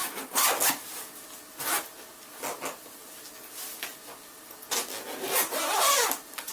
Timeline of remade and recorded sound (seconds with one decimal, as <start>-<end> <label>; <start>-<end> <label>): 0.0-6.5 recorded